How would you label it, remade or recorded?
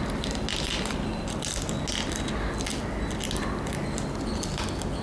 recorded